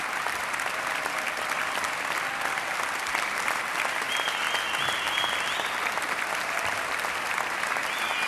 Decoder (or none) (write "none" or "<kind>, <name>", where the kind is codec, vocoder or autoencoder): none